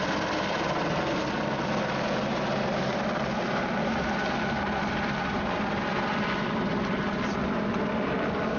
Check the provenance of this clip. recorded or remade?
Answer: recorded